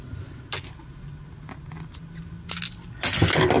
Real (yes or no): yes